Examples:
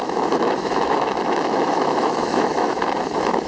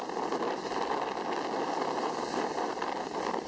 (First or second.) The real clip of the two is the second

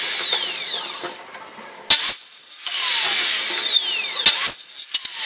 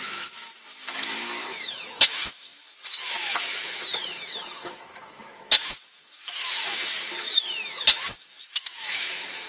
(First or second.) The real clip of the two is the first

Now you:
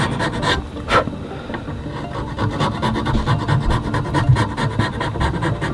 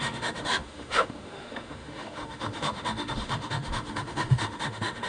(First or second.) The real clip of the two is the first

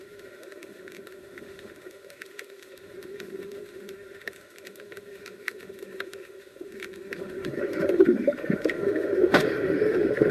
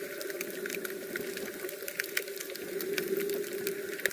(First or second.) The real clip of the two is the second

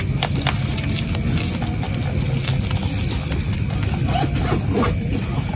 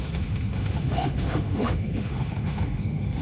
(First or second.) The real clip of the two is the first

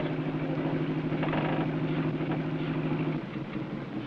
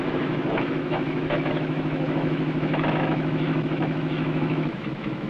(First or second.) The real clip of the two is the first